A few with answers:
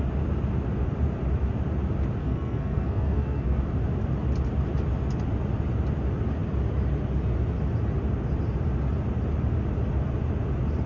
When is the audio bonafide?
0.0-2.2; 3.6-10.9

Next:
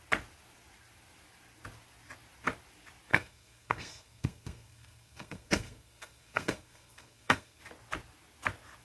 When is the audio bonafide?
0.0-3.1; 7.6-8.8